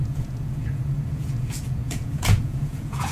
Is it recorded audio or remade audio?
remade